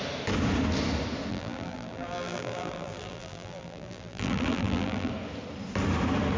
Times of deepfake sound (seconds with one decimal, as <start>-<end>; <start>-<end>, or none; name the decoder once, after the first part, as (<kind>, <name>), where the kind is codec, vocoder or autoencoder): 1.3-5.1 (vocoder, BigVGAN v2)